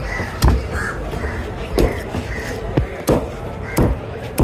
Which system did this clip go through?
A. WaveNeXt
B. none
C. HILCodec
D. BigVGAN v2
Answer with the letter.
D